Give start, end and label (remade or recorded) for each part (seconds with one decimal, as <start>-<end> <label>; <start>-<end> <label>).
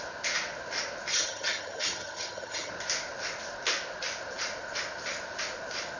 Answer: 0.0-1.1 recorded; 1.1-2.7 remade; 2.7-6.0 recorded